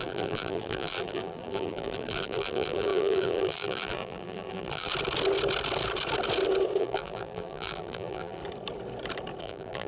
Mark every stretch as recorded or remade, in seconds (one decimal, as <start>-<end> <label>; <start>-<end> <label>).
0.0-4.9 remade; 4.9-6.8 recorded; 6.8-8.4 remade; 8.4-9.4 recorded; 9.4-9.9 remade